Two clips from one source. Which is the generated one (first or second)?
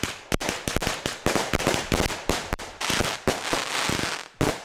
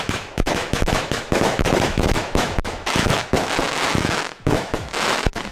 second